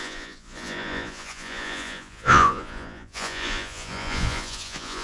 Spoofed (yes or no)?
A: yes